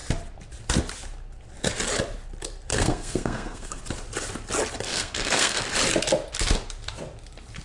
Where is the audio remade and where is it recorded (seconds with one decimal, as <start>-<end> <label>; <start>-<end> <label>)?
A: 0.0-2.7 recorded; 2.7-3.8 remade; 3.8-4.9 recorded; 4.9-5.6 remade; 5.6-7.6 recorded